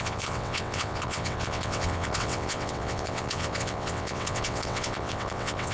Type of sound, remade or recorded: remade